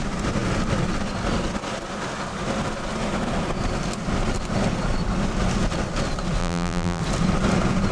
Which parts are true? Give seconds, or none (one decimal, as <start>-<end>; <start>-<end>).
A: 0.0-6.4; 7.0-7.9